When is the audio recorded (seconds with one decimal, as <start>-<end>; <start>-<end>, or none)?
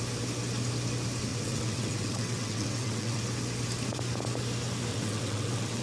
0.0-1.3; 3.2-4.9